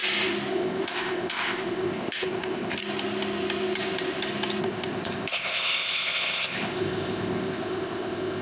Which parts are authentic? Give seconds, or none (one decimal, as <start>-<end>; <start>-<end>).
0.0-0.5; 2.8-4.6